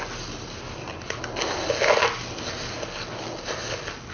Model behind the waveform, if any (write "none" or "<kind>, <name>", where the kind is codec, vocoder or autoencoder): none